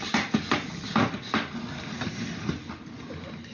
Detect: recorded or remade recorded